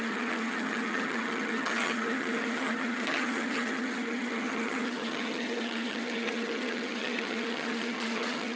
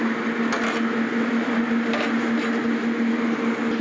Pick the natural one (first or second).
second